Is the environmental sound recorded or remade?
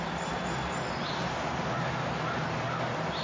recorded